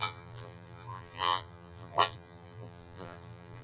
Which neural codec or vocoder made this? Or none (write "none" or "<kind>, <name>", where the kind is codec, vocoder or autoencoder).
vocoder, BigVGAN v2